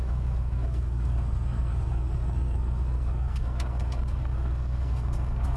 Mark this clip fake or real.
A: fake